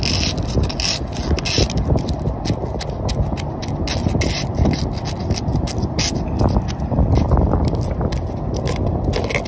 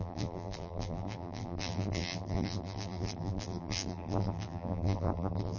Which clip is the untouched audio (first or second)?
first